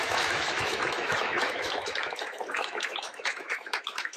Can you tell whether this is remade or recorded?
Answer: remade